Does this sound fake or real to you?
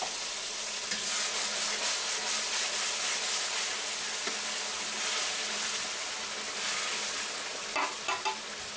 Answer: real